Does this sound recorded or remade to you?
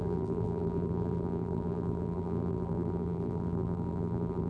remade